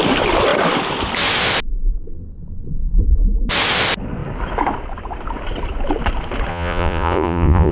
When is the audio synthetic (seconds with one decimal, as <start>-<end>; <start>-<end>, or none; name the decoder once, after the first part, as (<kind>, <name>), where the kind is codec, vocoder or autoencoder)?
6.5-7.7 (vocoder, Vocos)